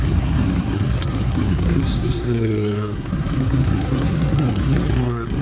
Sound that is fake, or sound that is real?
fake